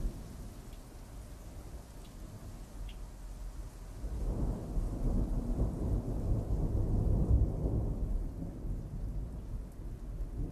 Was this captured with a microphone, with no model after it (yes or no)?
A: yes